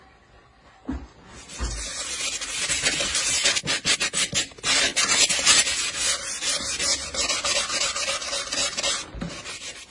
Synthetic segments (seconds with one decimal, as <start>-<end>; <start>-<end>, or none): none